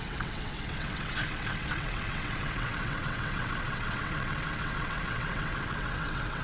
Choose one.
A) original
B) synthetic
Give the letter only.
B